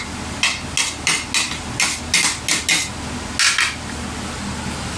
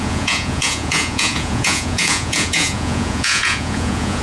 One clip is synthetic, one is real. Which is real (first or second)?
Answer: first